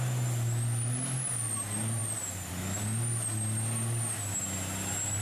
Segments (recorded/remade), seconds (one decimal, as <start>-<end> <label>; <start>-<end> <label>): 0.0-5.2 recorded